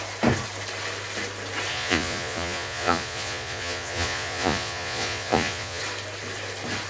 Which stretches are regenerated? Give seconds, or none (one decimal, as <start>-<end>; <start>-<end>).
1.7-5.8